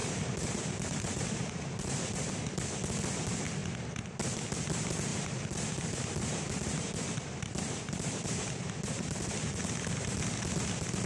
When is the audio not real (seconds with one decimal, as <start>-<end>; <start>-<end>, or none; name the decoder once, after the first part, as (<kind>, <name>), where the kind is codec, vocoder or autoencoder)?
0.0-2.3 (vocoder, BigVGAN v2); 5.1-9.6